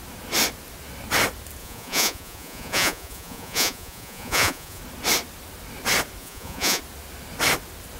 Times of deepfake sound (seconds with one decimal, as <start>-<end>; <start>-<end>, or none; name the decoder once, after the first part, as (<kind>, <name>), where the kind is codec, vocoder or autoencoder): 1.6-4.8 (vocoder, Vocos); 6.2-6.8